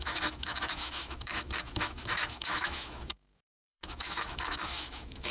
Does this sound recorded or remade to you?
remade